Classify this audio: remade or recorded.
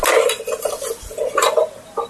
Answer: recorded